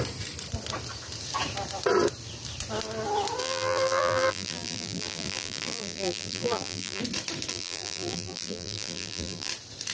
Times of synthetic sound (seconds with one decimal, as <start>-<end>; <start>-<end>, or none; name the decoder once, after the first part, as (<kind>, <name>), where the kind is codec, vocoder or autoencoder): 3.4-7.0 (vocoder, BigVGAN v2); 7.5-9.5